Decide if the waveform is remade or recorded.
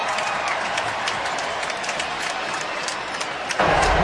remade